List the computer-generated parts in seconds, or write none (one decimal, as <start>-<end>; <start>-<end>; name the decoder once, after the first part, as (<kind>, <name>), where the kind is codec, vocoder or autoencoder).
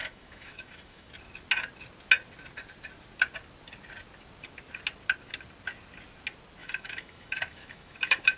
0.0-1.1 (autoencoder, DAC-VAE); 6.6-8.4